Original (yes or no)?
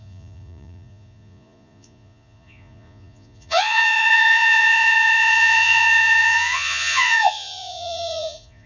no